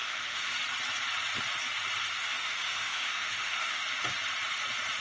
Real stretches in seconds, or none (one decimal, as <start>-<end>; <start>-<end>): 0.5-2.3; 3.8-5.0